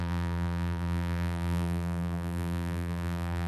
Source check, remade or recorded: remade